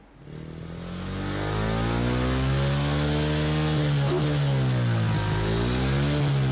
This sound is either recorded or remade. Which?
recorded